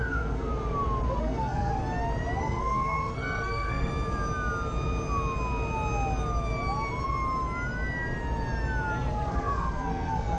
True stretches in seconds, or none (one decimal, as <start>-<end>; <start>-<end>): 0.5-1.2; 1.7-2.4; 3.9-9.1